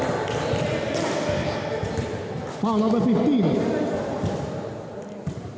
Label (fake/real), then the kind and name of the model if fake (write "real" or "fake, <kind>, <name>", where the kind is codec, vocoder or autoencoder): real